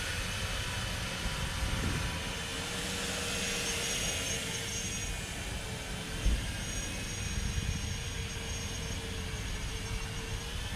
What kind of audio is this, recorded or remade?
recorded